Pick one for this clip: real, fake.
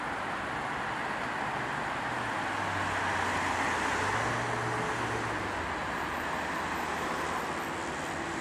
real